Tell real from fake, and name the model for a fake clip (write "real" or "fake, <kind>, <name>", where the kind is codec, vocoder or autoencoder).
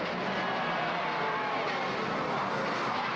real